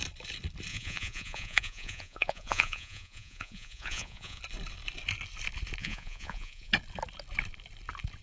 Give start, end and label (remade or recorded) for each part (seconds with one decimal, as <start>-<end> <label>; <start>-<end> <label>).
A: 0.0-0.7 recorded; 0.7-4.4 remade; 4.4-5.8 recorded; 5.8-6.7 remade; 6.7-8.2 recorded